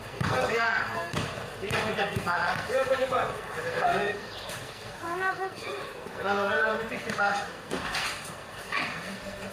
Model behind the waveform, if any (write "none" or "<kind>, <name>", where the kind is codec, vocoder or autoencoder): codec, SNAC